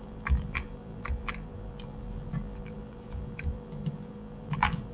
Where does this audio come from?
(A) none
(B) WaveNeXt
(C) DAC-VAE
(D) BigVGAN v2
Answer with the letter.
D